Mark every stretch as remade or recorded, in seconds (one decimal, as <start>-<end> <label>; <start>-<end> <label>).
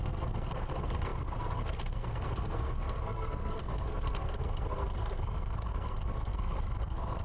0.0-7.2 remade